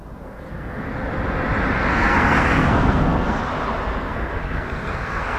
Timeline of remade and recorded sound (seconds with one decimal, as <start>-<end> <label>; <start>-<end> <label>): 0.0-0.9 remade; 0.9-1.7 recorded; 1.7-3.4 remade; 3.4-4.0 recorded; 4.0-5.4 remade